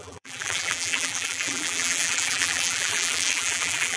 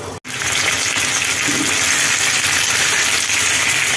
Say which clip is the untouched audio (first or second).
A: second